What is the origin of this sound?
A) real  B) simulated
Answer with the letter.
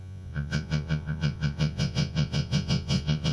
B